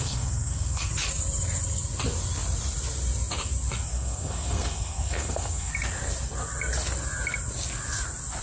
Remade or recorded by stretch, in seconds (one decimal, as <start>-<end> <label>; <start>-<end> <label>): 0.0-0.9 remade; 0.9-3.9 recorded; 3.9-5.7 remade; 5.7-8.4 recorded